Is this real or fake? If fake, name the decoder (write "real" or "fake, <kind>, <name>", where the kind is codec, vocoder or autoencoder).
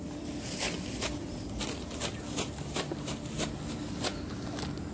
real